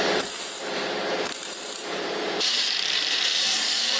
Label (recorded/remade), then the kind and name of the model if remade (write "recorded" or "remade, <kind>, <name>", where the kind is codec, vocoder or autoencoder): remade, vocoder, BigVGAN v2